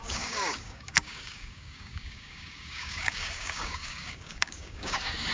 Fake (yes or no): yes